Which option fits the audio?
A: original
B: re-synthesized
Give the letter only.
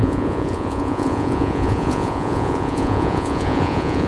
B